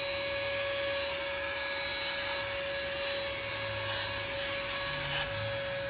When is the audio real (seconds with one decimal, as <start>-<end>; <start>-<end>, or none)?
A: 0.0-5.9